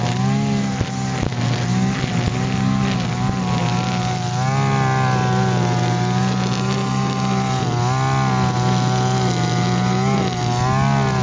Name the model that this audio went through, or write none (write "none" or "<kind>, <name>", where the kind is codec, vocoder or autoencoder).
none